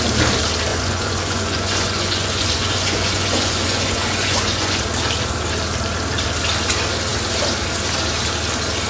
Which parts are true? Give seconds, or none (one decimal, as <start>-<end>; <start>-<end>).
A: 0.0-0.7; 4.8-8.9